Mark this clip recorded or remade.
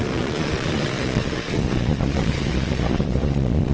remade